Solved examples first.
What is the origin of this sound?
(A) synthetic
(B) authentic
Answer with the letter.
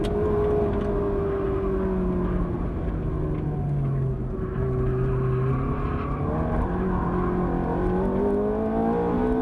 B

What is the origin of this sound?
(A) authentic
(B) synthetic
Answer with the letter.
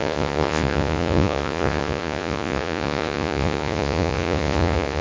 B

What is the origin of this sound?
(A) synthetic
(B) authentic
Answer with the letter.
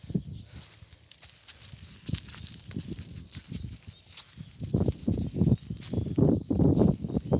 B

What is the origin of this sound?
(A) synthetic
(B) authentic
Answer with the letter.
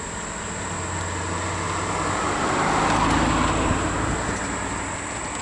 B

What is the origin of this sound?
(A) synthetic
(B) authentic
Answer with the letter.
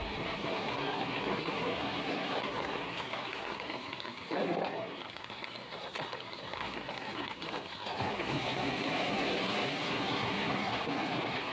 A